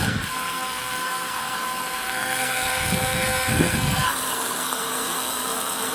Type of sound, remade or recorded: remade